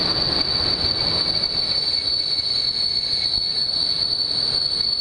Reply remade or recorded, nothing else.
recorded